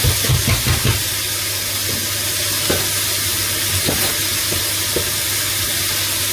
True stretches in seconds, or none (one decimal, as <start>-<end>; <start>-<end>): 0.0-6.3